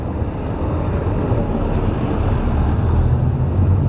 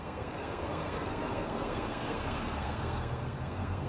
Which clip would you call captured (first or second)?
first